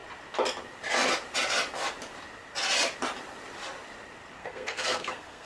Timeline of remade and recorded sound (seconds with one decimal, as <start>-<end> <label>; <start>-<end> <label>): 0.0-4.4 recorded; 4.4-5.5 remade